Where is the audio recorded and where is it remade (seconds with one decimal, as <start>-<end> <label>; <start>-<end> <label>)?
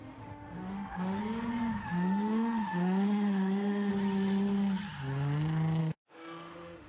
0.0-1.2 remade; 1.2-1.8 recorded; 1.8-3.9 remade; 3.9-5.8 recorded; 5.8-6.9 remade